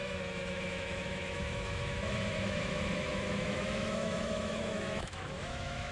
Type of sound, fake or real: fake